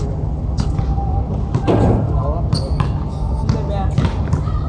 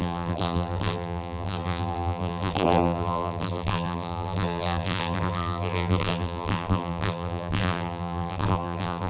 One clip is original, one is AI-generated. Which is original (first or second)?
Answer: first